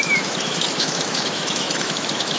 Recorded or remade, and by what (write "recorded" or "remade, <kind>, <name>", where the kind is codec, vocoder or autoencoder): remade, autoencoder, DAC-VAE